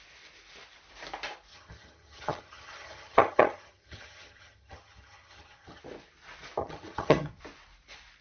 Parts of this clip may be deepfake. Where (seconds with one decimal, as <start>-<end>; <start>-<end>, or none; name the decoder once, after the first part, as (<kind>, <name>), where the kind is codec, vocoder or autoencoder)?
1.5-5.8 (vocoder, HiFi-GAN); 6.6-7.4

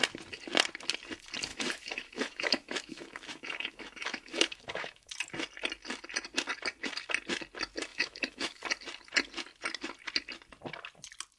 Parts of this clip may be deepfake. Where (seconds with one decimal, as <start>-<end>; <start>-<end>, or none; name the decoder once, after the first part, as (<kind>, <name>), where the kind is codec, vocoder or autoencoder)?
1.5-5.1 (autoencoder, DAC-VAE); 7.9-8.6

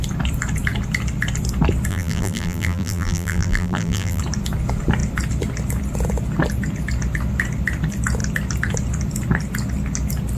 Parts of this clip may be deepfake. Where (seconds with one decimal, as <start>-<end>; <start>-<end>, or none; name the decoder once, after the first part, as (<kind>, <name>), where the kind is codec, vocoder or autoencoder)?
1.9-4.2 (vocoder, BigVGAN v2)

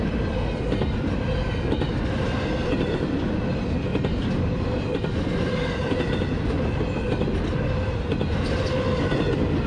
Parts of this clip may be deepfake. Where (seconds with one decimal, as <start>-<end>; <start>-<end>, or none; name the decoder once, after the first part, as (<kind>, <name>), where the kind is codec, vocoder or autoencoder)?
3.9-5.5 (vocoder, BigVGAN v2)

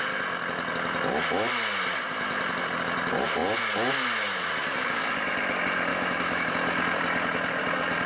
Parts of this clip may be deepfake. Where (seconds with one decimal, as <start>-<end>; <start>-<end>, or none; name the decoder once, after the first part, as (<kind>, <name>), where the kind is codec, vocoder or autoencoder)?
5.9-6.5 (autoencoder, DAC-VAE)

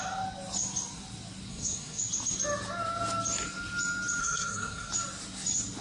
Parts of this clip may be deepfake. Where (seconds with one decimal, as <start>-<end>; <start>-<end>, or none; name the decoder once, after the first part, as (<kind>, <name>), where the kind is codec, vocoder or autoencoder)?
1.5-2.0 (codec, SNAC); 4.2-4.9

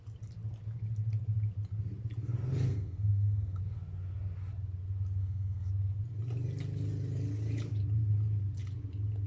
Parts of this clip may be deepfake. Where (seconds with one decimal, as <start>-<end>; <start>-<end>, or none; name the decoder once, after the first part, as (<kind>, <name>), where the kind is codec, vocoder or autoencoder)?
2.7-3.6 (codec, SNAC); 5.2-5.7